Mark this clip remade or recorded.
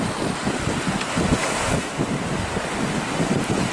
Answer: recorded